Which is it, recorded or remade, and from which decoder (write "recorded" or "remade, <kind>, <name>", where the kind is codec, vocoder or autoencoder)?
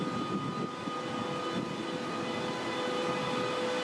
recorded